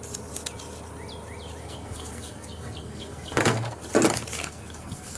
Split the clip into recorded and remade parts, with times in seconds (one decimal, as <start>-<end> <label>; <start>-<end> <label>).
0.0-1.6 recorded; 1.6-3.8 remade; 3.8-4.4 recorded; 4.4-5.2 remade